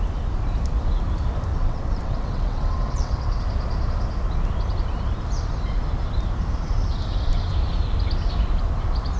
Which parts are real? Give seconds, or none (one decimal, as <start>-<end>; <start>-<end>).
0.0-1.5; 3.4-9.2